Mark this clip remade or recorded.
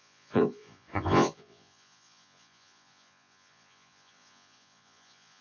remade